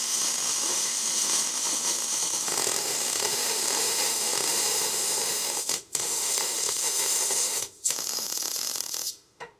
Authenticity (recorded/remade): remade